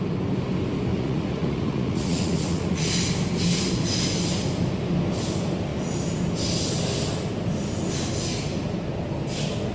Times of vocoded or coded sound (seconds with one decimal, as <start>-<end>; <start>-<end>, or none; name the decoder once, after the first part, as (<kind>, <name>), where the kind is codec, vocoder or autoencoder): 0.9-2.9 (vocoder, Vocos)